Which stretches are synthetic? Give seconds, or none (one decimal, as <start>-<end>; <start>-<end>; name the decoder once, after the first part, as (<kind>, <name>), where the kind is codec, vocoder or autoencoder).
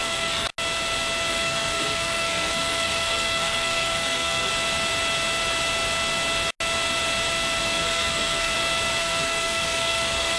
0.0-0.5 (codec, SNAC); 1.3-4.5; 7.6-8.5; 9.0-10.4